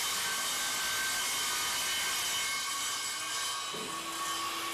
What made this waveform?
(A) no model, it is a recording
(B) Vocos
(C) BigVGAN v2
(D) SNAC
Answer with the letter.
A